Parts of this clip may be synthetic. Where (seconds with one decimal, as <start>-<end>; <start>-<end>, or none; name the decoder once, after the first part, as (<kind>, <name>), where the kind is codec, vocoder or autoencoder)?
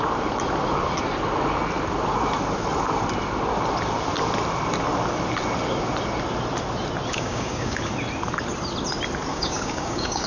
7.1-7.9 (codec, DAC); 9.3-10.3